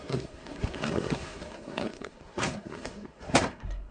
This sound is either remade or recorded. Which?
remade